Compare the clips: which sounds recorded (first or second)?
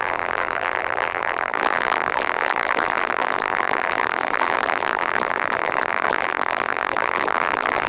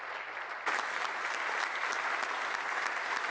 second